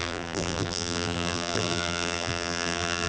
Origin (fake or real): fake